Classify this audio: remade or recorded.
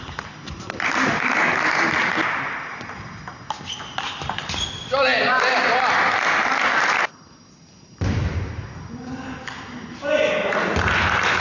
recorded